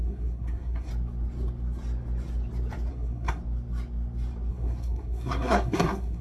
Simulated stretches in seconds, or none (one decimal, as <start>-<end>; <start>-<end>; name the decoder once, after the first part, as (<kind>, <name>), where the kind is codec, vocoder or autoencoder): 0.0-0.9 (codec, SNAC); 2.9-3.4; 4.5-6.2